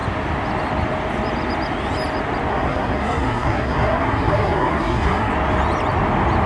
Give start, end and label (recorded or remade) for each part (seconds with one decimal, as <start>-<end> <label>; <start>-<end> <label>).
0.0-2.5 recorded; 2.5-5.3 remade; 5.3-6.5 recorded